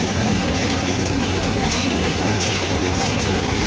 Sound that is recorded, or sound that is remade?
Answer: remade